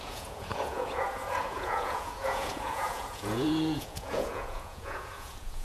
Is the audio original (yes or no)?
no